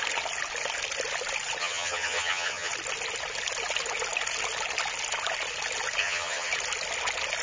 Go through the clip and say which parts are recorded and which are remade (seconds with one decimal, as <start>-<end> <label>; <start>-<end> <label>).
0.0-1.6 recorded; 1.6-2.7 remade; 2.7-6.0 recorded; 6.0-6.5 remade; 6.5-7.4 recorded